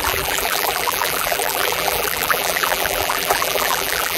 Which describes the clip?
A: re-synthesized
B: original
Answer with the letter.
A